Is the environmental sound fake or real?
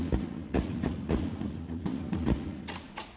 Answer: fake